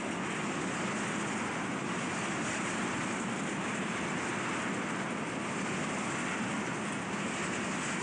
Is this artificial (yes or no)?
no